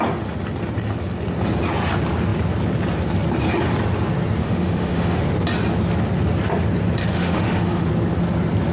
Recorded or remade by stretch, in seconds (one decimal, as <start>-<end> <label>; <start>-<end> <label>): 0.0-4.4 recorded; 4.4-5.2 remade; 5.2-7.0 recorded; 7.0-7.9 remade; 7.9-8.7 recorded